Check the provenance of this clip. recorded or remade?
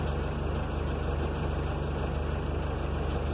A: recorded